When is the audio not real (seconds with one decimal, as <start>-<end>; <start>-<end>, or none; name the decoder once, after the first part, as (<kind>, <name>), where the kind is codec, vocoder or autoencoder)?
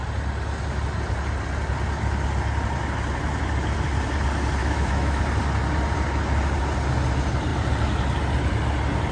4.6-5.2 (autoencoder, DAC-VAE)